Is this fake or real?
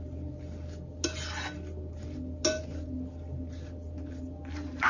real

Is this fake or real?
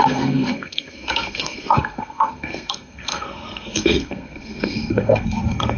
fake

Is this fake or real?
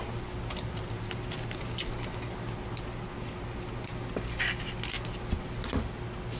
real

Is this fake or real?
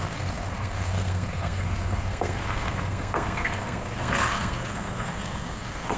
fake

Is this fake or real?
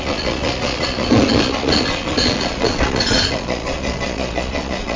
fake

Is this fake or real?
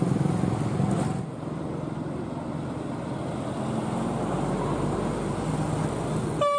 real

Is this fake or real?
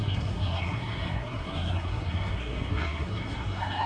fake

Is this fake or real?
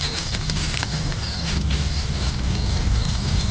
fake